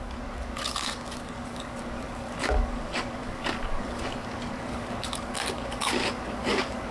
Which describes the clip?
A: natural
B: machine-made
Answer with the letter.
B